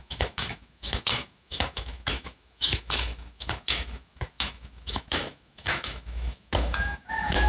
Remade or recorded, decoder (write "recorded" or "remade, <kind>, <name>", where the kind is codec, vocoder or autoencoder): remade, autoencoder, DAC-VAE